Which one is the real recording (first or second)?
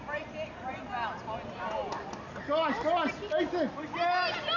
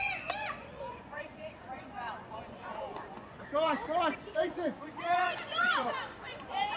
first